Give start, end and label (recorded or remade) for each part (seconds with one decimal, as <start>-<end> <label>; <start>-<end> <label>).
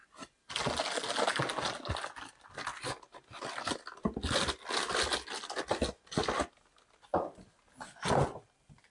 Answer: 0.0-8.9 recorded